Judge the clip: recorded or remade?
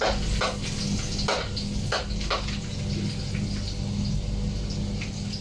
recorded